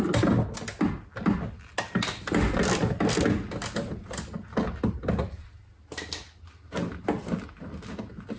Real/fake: real